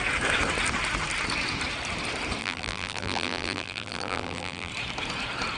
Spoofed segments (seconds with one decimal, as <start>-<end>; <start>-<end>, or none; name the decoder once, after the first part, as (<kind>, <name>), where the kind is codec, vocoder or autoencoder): 2.4-4.7 (vocoder, BigVGAN v2)